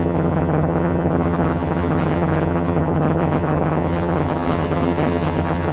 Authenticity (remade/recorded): remade